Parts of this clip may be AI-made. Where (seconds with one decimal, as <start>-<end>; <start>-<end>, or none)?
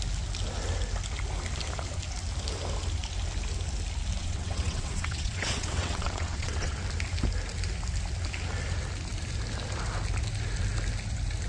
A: 4.2-6.7